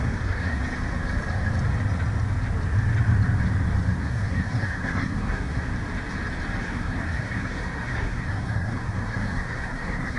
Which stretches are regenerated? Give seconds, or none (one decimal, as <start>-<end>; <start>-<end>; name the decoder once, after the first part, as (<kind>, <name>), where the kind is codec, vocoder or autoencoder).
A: 0.0-0.6 (codec, SNAC); 4.0-5.7; 6.6-10.2